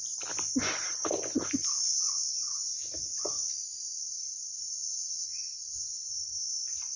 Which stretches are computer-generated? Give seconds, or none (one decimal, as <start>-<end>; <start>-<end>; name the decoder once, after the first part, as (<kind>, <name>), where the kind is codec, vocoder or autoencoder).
none